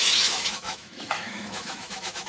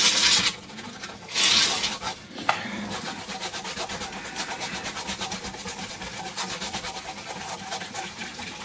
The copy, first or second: first